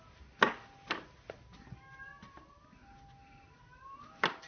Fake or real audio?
real